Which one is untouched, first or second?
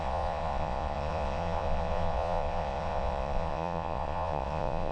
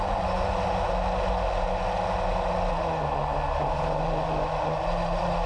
second